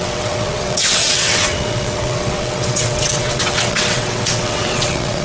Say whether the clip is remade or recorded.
remade